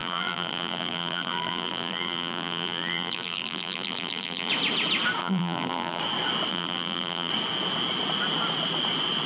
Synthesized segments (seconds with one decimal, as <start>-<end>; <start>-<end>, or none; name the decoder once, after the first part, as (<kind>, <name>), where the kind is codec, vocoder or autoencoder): 0.0-4.5 (vocoder, BigVGAN v2); 5.2-6.0; 6.5-7.3